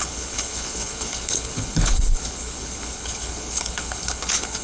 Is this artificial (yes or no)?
yes